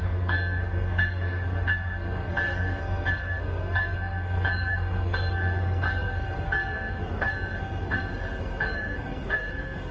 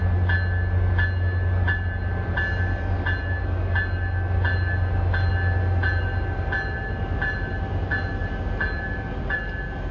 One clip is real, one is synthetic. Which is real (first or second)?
second